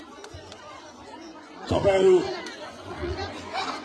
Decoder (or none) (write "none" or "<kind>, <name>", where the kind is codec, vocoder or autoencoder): vocoder, Vocos